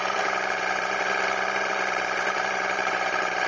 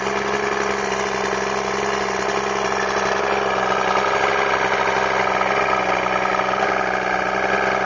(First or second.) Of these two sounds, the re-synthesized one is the first